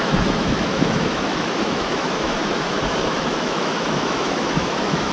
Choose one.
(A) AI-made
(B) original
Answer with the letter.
A